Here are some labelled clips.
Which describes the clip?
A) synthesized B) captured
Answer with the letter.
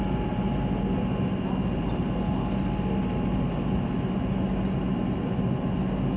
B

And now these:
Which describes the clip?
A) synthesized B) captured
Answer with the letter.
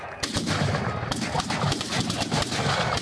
B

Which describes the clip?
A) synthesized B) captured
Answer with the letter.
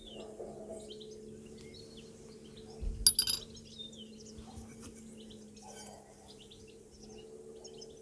B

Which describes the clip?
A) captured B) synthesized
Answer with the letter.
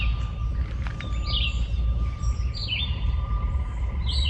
B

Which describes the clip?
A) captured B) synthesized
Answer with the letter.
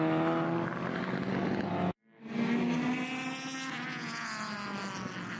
A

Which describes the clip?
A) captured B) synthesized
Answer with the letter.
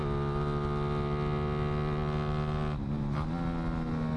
A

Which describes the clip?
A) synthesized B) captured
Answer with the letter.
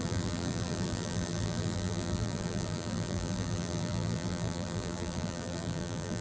A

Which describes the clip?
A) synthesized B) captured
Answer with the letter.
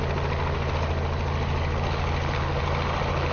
B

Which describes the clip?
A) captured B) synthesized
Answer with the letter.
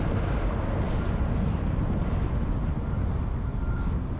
A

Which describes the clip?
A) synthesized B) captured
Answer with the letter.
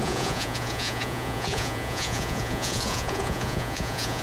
A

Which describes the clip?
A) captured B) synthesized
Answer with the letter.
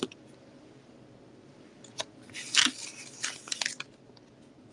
A